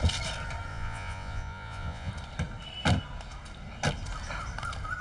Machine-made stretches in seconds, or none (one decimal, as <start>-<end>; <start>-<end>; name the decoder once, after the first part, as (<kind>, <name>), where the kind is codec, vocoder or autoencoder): 0.7-2.1 (vocoder, Vocos)